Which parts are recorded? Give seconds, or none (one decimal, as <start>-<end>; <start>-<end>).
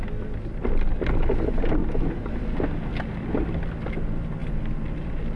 0.0-5.4